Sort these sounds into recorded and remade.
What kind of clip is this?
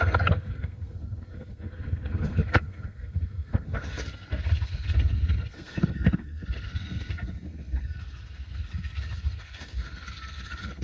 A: remade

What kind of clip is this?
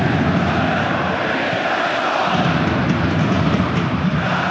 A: recorded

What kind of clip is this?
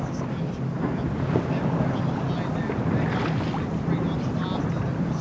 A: recorded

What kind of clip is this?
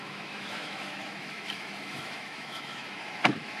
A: remade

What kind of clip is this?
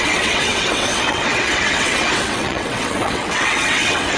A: remade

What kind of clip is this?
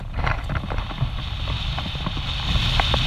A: recorded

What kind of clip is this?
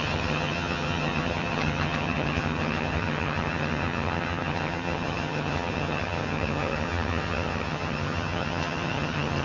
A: remade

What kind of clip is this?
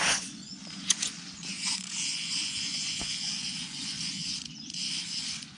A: remade